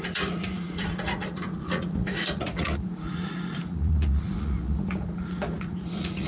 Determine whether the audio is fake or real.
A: fake